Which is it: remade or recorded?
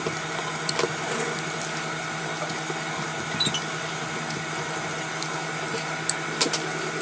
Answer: recorded